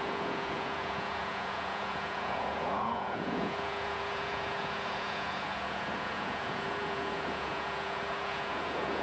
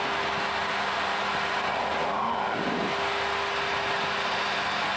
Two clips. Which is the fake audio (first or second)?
first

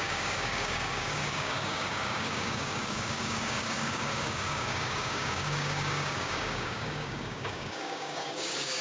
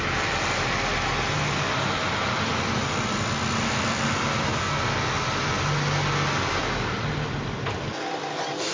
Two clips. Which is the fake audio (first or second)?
first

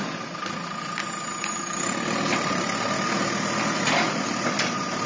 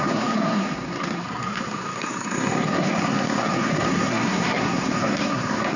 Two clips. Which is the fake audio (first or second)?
second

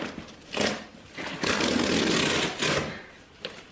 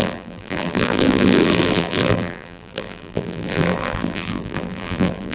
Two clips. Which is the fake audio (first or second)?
second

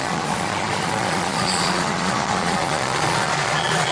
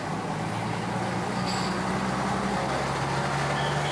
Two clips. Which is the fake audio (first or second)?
first